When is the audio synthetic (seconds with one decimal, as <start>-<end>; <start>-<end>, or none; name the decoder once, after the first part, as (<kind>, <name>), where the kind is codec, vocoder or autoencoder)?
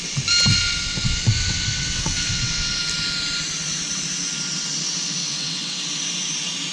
0.5-2.8 (vocoder, WaveNeXt); 5.2-5.8